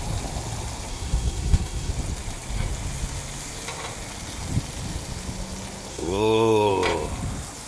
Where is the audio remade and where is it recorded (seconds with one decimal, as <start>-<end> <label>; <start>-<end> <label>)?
0.0-0.9 recorded; 0.9-1.9 remade; 1.9-5.9 recorded; 5.9-6.7 remade; 6.7-7.7 recorded